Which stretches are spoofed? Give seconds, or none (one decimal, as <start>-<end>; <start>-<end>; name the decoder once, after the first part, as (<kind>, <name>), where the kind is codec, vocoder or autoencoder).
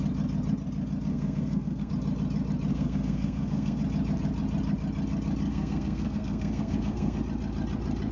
1.1-1.9 (codec, SNAC); 2.7-3.8; 5.5-7.2